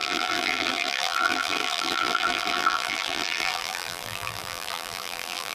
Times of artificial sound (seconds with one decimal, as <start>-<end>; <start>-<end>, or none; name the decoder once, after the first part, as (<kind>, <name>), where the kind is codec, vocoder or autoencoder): 0.0-5.5 (vocoder, BigVGAN v2)